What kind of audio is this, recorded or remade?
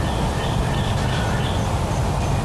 recorded